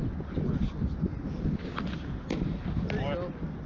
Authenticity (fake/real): real